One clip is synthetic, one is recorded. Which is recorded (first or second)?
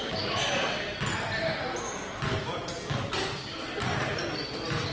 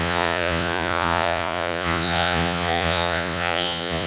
first